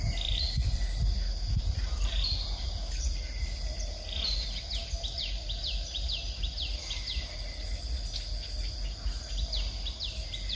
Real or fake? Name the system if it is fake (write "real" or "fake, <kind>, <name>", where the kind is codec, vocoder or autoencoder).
fake, vocoder, BigVGAN v2